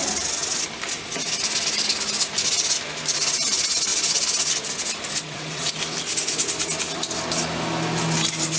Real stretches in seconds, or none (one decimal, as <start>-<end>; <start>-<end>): 0.0-5.2; 5.7-8.6